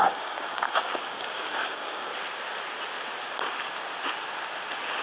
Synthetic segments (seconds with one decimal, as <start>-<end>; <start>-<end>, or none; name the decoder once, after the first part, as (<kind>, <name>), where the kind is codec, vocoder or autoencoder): 0.0-2.1 (codec, DAC)